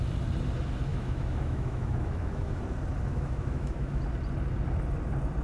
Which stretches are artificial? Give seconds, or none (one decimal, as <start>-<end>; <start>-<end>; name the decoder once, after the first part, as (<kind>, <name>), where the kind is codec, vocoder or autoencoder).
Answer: 0.9-2.6 (autoencoder, DAC-VAE); 3.1-4.0